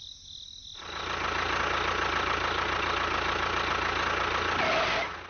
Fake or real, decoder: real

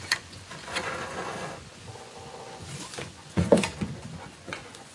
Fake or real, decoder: fake, vocoder, Vocos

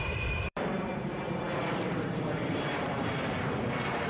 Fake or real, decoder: fake, vocoder, BigVGAN v2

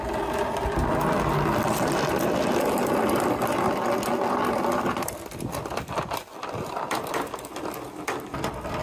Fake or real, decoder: real